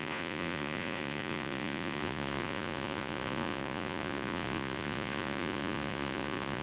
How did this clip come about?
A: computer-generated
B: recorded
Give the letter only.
A